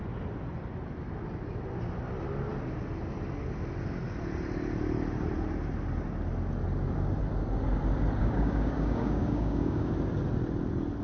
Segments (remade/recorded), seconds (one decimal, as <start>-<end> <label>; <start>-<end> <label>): 0.0-8.2 recorded; 8.2-9.9 remade; 9.9-11.0 recorded